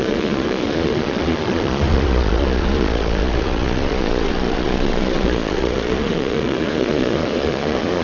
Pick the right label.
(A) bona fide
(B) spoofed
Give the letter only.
B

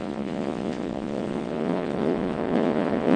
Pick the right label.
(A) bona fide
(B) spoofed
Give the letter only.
B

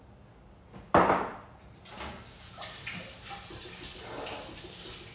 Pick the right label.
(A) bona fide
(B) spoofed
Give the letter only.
A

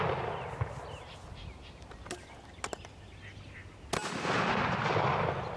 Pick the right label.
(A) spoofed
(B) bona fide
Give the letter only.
B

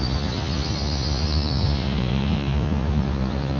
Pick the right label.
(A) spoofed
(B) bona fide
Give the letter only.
A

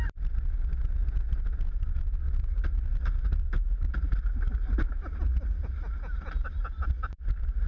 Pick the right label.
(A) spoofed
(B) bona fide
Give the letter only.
B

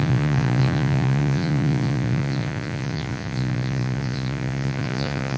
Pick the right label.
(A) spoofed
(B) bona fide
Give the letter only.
A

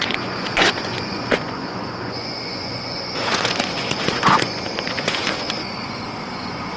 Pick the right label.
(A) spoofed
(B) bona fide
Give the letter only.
A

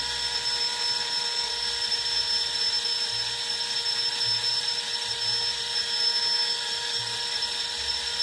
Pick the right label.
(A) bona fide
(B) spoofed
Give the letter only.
A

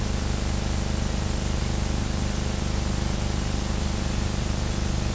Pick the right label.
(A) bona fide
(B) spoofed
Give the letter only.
A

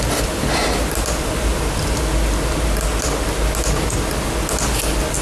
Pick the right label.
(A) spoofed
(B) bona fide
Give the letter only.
B